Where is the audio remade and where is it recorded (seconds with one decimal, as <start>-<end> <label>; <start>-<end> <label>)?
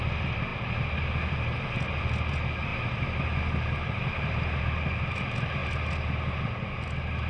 0.0-7.3 recorded